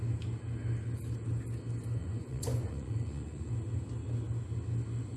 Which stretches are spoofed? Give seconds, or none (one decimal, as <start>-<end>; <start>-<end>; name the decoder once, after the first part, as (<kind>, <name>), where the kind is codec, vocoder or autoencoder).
2.0-3.5 (vocoder, Vocos)